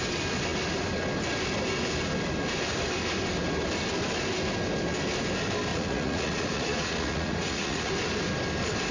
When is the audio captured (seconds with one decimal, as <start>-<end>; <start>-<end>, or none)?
0.0-5.7; 7.9-8.9